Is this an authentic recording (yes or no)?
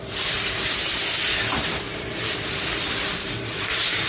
no